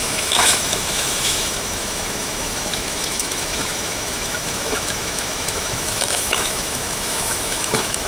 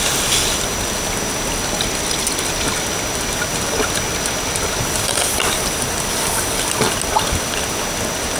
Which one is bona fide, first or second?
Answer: second